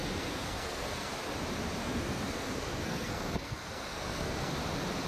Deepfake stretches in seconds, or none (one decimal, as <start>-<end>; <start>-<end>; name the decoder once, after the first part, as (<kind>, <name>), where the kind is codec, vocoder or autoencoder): 0.0-1.1 (codec, SNAC); 1.8-4.5